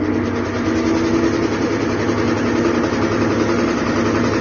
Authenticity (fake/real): real